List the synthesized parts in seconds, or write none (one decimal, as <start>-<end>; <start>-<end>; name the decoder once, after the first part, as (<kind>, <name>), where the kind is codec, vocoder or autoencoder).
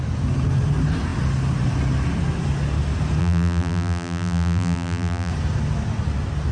3.2-5.3 (vocoder, BigVGAN v2)